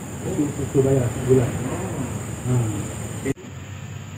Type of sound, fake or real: real